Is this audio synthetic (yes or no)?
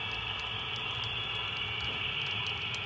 no